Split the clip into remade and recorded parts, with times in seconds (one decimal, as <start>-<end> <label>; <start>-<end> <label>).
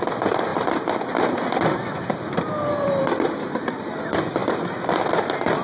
0.0-0.5 recorded; 0.5-3.9 remade; 3.9-4.4 recorded; 4.4-4.9 remade; 4.9-5.6 recorded